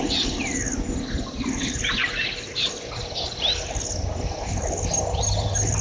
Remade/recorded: recorded